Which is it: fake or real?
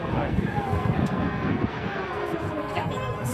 fake